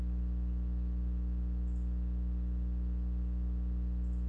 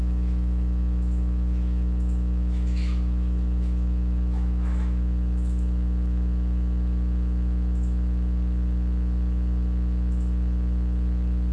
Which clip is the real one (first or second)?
first